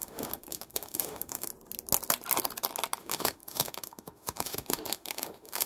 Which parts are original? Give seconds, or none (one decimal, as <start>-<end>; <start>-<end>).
1.5-3.0